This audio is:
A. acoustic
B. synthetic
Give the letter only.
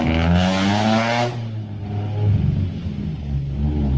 A